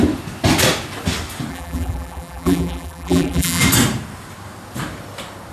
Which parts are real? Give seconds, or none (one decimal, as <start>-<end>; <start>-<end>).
0.0-1.5; 3.6-5.5